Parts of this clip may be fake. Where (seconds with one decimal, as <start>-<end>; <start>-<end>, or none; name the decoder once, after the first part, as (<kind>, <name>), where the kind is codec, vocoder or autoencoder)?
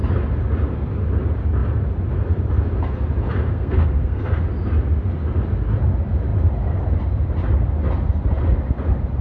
3.5-4.5 (codec, SNAC)